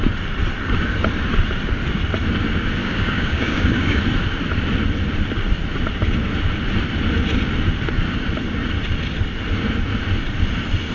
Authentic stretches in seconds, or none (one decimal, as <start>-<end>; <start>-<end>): 0.0-2.8; 4.0-10.9